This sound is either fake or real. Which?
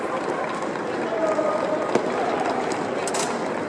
real